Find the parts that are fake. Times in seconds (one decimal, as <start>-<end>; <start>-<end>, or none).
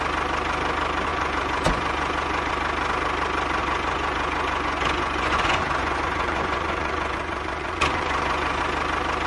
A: 1.1-2.5; 3.6-8.6